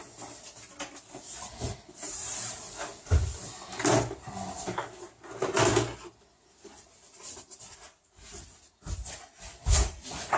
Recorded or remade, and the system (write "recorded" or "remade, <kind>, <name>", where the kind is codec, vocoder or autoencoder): recorded